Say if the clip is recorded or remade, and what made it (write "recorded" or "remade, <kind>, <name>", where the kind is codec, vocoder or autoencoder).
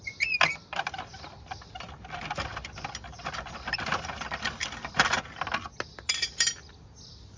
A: recorded